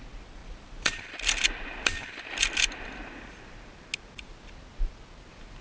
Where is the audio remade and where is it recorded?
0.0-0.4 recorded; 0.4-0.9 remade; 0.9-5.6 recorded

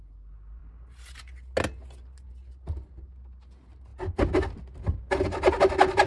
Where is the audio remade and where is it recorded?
0.0-6.1 recorded

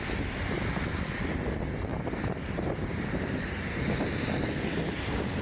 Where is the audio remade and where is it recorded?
0.0-5.4 recorded

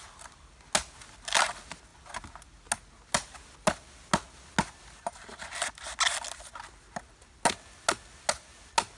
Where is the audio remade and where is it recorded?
0.0-9.0 recorded

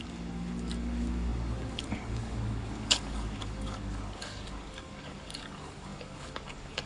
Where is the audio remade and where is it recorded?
0.0-6.9 remade

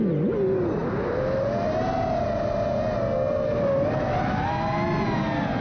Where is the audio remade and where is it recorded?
0.0-5.6 recorded

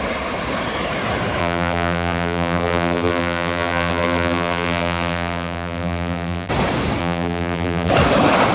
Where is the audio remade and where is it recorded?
0.0-1.4 recorded; 1.4-6.5 remade; 6.5-7.0 recorded; 7.0-7.9 remade; 7.9-8.5 recorded

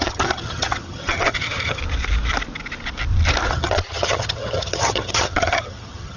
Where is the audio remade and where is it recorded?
0.0-1.8 remade; 1.8-3.5 recorded; 3.5-6.2 remade